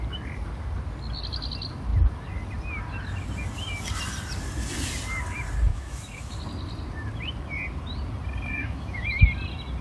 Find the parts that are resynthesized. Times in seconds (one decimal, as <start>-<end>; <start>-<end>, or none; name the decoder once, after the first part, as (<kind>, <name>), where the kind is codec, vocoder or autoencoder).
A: 5.7-6.3 (autoencoder, DAC-VAE); 8.6-9.2